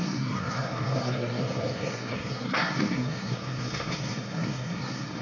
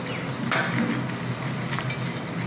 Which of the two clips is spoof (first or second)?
first